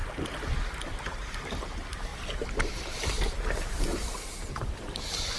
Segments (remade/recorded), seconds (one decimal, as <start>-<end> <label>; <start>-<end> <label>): 0.0-1.0 recorded; 1.0-5.4 remade